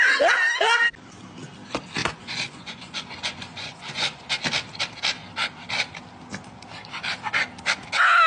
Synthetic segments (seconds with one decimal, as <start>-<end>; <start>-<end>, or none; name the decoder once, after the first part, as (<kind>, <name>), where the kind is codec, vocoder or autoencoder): 2.0-4.4 (vocoder, Vocos)